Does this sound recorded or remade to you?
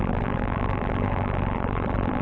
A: remade